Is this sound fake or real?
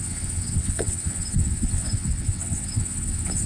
fake